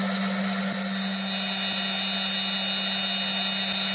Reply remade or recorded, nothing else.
recorded